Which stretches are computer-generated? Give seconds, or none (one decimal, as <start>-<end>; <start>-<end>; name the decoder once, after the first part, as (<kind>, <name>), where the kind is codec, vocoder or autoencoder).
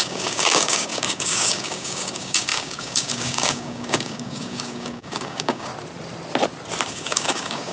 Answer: 0.0-5.7 (codec, DAC); 6.9-7.7